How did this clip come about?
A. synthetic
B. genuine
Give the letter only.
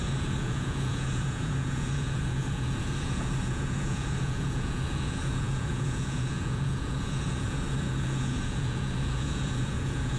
A